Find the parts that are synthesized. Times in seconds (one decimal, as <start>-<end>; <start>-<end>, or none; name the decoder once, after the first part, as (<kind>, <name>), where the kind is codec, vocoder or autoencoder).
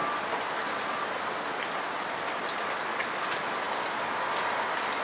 none